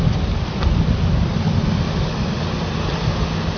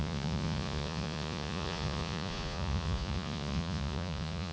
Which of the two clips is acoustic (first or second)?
first